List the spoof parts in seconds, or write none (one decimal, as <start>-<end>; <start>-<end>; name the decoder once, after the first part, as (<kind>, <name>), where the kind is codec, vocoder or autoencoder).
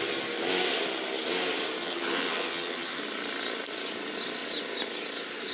1.8-3.0 (vocoder, HiFi-GAN)